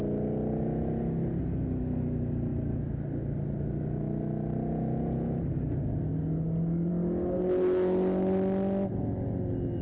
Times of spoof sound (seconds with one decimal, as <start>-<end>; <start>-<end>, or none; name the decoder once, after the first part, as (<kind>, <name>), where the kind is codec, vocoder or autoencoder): none

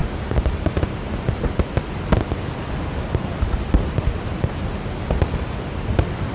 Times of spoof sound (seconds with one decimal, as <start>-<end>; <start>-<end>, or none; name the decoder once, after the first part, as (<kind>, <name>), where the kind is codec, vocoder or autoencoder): none

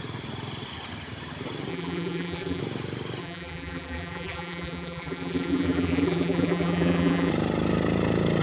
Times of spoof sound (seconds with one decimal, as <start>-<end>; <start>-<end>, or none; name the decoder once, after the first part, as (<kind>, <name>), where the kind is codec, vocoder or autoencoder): 1.7-2.6 (vocoder, BigVGAN v2); 3.2-7.3